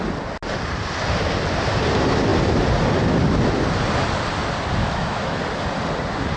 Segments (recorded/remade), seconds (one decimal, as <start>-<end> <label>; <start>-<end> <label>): 0.0-4.8 recorded; 4.8-5.4 remade; 5.4-6.4 recorded